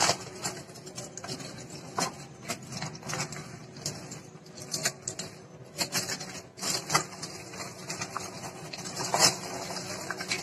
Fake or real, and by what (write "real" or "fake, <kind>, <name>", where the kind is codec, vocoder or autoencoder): real